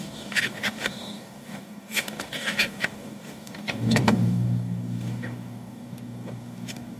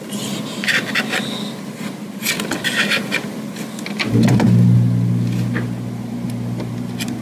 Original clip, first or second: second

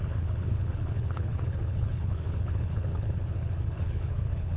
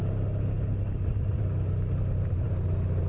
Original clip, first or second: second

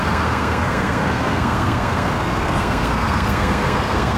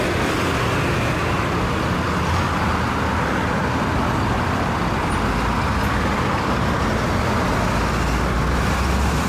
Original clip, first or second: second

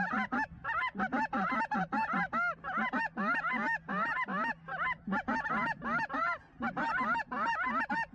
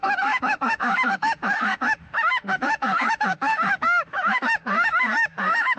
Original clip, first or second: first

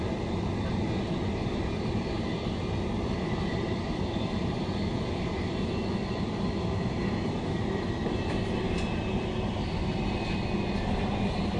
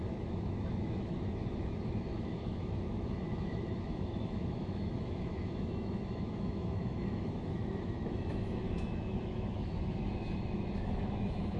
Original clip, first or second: first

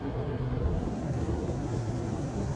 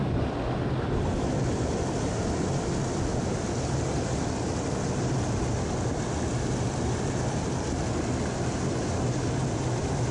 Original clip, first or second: second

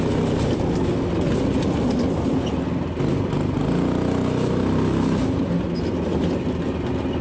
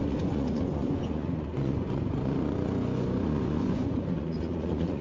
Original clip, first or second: first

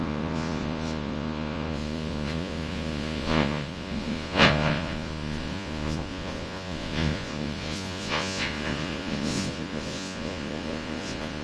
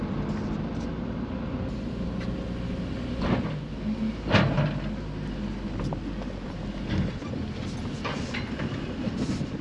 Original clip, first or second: second